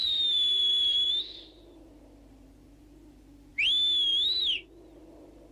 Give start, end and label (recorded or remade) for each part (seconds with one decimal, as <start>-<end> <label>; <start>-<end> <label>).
0.0-1.1 remade; 1.1-5.5 recorded